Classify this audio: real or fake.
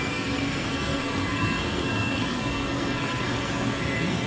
fake